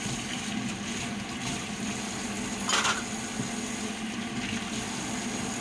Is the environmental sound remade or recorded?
recorded